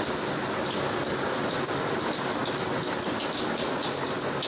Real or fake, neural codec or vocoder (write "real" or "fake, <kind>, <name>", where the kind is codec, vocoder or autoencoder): real